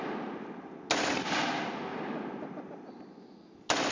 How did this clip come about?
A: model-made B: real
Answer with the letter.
B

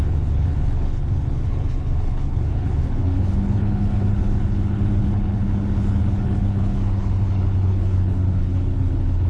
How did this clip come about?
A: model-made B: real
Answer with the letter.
A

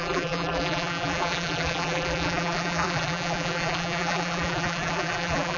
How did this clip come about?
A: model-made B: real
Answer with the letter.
A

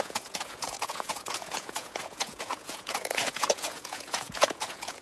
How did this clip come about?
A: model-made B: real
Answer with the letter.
A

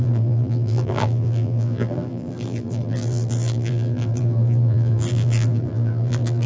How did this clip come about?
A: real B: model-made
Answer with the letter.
B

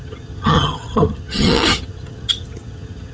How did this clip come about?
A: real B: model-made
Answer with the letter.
B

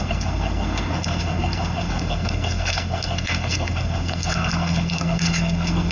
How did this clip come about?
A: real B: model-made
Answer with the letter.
B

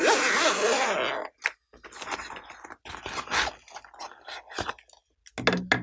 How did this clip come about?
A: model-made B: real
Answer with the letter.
B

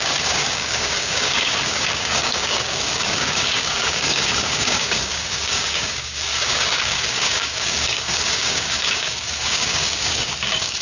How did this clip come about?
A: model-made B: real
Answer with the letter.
A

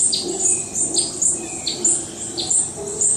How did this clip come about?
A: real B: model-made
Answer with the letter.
A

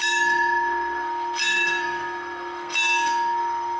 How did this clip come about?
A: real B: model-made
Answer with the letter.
B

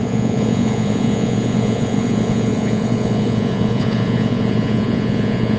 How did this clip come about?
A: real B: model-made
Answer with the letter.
B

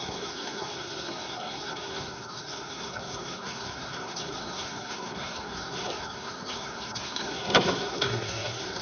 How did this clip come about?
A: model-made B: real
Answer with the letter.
A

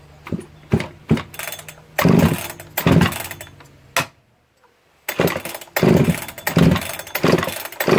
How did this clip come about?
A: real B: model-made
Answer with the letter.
A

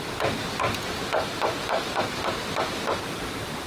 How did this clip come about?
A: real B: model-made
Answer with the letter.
B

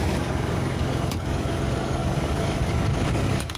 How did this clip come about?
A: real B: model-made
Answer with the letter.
B